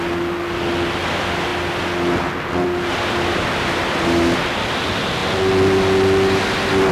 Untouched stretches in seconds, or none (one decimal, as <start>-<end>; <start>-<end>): 0.0-6.9